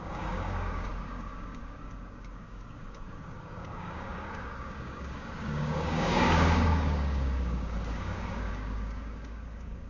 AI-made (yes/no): yes